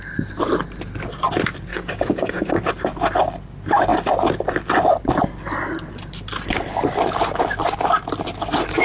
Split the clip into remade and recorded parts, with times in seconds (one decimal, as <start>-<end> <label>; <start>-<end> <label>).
0.0-1.7 recorded; 1.7-2.6 remade; 2.6-8.8 recorded